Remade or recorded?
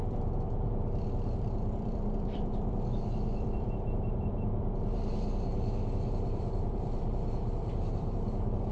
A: remade